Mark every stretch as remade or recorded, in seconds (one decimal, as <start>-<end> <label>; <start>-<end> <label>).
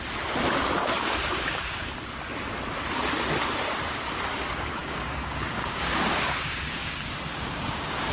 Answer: 0.0-0.8 recorded; 0.8-1.9 remade; 1.9-4.8 recorded; 4.8-8.1 remade